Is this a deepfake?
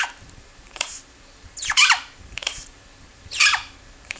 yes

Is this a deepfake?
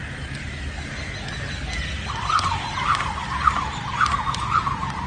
no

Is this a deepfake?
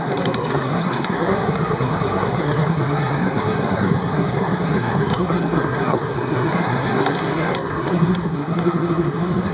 yes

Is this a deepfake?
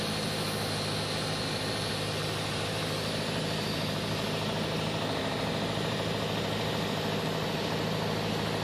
no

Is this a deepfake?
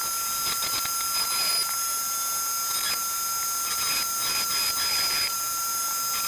no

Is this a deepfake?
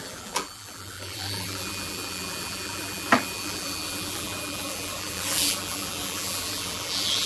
yes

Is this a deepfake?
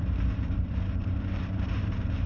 yes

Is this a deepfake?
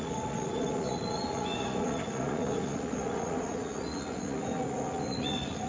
yes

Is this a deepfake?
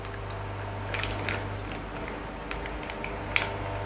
no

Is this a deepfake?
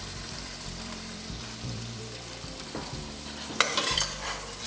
yes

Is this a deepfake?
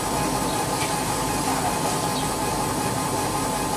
no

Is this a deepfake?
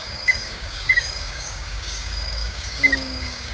yes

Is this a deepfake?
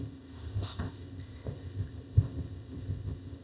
yes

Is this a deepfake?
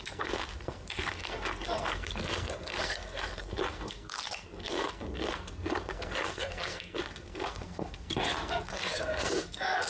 yes